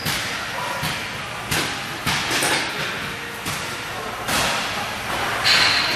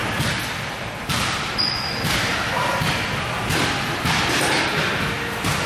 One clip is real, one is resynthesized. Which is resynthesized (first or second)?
second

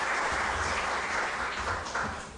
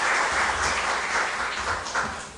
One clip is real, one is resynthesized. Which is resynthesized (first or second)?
first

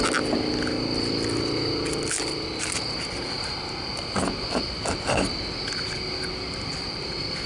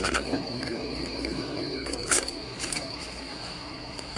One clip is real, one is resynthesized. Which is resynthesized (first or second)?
second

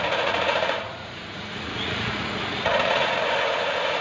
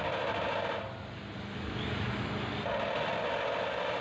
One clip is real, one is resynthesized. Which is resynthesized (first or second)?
first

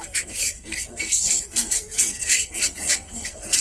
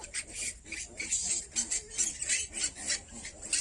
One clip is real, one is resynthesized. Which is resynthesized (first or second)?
first